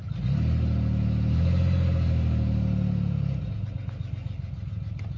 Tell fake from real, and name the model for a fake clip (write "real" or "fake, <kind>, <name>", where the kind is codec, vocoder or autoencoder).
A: real